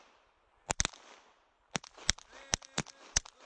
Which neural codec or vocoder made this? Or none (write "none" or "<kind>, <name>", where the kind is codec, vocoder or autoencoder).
none